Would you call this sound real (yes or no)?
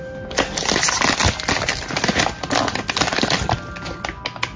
yes